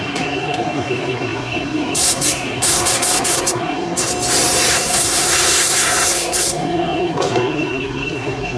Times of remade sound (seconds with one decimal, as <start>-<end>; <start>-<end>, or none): 0.0-4.1; 4.7-8.6